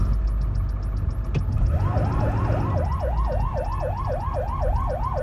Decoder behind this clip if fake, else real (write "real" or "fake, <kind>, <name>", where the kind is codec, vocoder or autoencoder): real